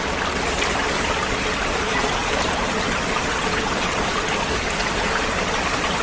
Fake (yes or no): no